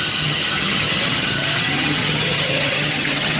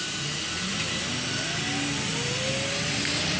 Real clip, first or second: second